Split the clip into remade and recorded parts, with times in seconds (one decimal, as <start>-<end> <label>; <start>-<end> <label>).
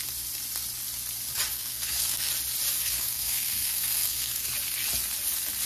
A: 0.0-1.5 recorded; 1.5-2.3 remade; 2.3-2.8 recorded; 2.8-4.5 remade; 4.5-5.7 recorded